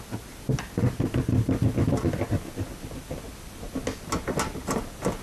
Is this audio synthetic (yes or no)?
no